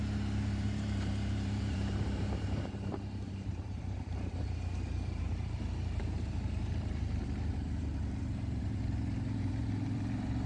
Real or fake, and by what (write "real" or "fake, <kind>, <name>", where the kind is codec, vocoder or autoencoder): fake, vocoder, BigVGAN v2